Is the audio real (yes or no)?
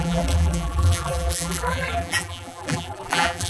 no